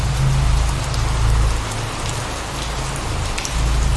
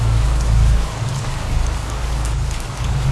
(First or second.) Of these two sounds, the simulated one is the second